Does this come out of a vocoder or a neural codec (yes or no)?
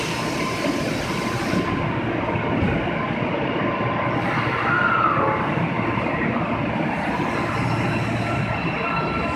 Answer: no